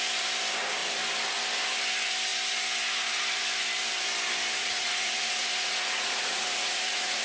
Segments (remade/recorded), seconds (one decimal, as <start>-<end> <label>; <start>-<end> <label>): 0.0-4.6 recorded; 4.6-7.2 remade